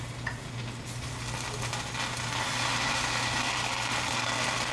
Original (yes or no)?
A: yes